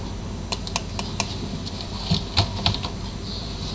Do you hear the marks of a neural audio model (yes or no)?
no